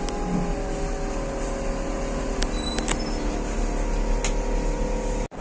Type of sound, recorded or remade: recorded